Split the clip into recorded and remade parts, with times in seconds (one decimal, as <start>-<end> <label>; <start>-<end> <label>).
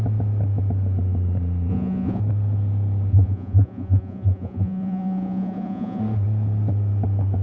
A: 0.0-1.7 recorded; 1.7-2.2 remade; 2.2-3.1 recorded; 3.1-6.0 remade; 6.0-7.4 recorded